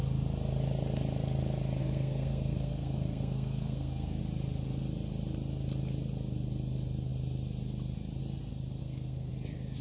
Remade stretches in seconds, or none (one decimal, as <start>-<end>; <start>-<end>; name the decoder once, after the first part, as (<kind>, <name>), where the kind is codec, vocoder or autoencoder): 1.8-4.2 (codec, SNAC); 8.8-9.3